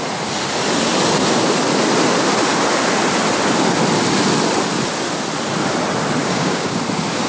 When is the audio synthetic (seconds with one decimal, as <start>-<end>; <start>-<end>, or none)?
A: 6.2-6.8